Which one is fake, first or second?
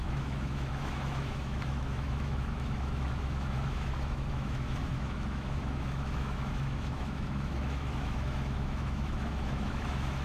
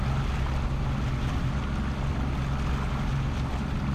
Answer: first